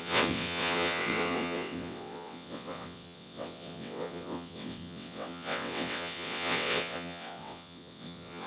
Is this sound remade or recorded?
remade